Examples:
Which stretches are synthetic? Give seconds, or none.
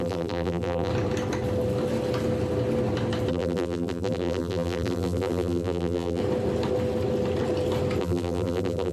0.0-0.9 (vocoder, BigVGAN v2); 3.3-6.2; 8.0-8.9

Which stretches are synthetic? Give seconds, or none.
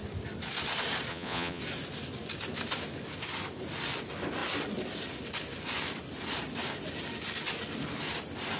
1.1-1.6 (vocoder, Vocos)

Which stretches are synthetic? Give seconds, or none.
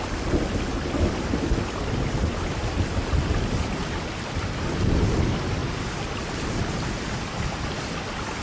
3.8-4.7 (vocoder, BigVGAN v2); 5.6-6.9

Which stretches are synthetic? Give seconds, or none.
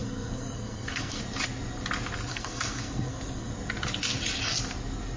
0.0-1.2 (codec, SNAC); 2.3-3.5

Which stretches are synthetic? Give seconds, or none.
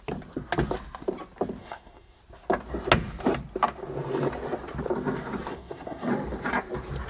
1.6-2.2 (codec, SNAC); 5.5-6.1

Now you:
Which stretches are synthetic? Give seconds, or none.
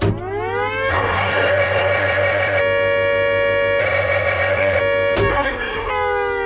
0.9-2.6 (codec, SNAC); 3.8-4.8; 5.3-5.9